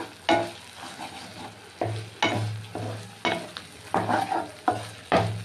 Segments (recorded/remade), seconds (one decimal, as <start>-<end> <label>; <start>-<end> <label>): 0.0-5.4 recorded